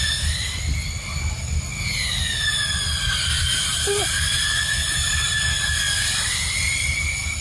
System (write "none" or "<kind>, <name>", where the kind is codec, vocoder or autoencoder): none